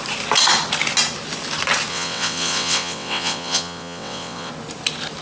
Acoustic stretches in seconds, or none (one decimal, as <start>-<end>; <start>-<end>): 0.0-1.9; 4.5-5.2